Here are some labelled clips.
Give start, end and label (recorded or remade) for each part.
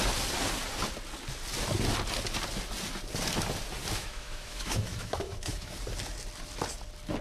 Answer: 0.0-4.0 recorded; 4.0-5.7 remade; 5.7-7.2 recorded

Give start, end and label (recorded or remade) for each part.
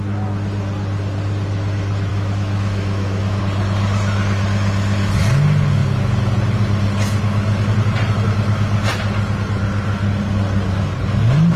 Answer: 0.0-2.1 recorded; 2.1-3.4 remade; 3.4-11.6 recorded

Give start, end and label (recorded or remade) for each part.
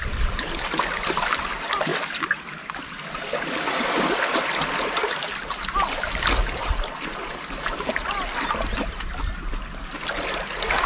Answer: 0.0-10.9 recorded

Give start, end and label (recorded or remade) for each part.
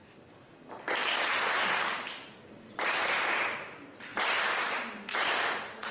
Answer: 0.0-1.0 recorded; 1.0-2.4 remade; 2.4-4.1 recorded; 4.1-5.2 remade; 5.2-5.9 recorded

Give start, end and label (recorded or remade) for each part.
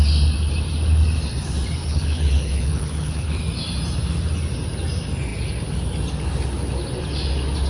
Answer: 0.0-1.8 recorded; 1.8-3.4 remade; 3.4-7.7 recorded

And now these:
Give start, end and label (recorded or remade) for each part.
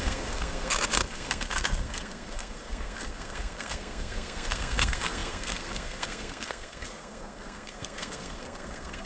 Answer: 0.0-9.1 remade